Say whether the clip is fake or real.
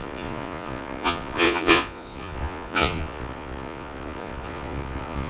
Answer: fake